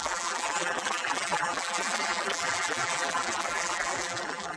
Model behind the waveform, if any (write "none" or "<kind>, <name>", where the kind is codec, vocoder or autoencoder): vocoder, BigVGAN v2